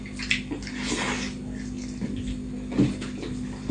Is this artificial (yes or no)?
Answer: no